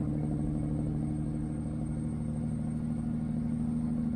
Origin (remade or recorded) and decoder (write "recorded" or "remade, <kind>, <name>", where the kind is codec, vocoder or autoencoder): recorded